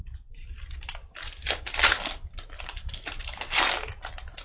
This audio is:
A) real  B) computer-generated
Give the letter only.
A